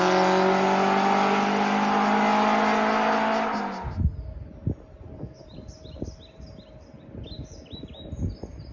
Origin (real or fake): real